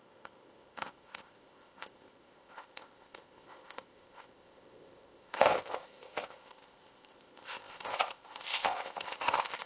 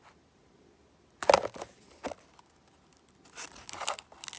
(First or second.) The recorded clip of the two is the second